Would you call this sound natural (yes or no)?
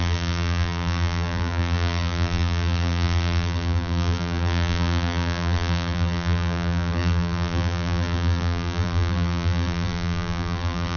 no